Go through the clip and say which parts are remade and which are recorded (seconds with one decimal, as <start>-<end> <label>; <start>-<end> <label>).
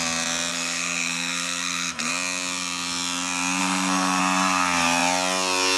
0.0-0.5 recorded; 0.5-2.1 remade; 2.1-3.6 recorded; 3.6-4.2 remade; 4.2-5.8 recorded